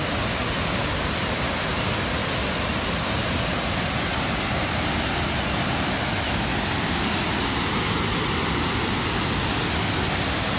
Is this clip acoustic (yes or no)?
yes